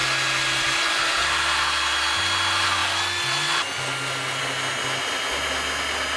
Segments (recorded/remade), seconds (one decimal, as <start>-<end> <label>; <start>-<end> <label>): 0.0-6.2 recorded